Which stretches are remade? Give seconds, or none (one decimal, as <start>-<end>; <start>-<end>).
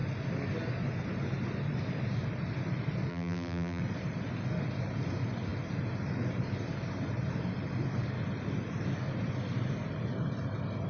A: 3.1-3.8